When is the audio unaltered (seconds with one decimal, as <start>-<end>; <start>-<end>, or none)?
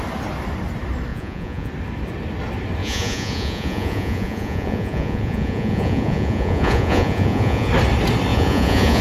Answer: 0.0-1.1; 1.7-2.8; 7.7-8.3